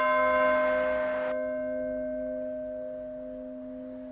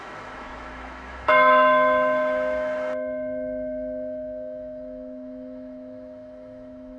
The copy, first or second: second